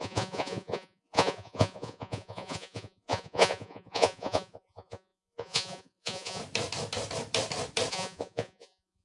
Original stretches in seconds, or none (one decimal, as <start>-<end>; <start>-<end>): 6.4-7.9